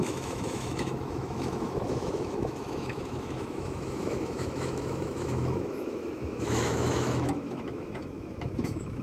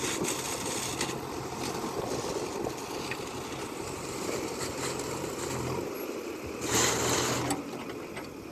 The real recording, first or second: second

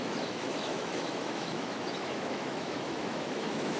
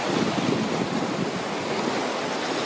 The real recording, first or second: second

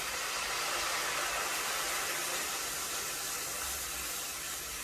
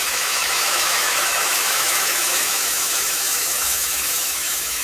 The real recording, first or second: first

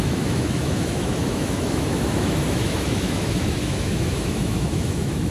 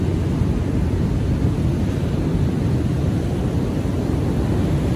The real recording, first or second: second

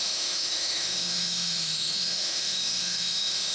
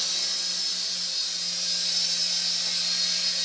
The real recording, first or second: second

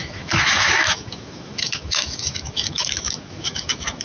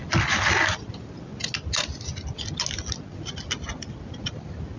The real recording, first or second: second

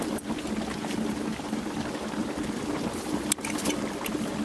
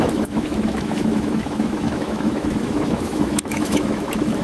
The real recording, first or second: first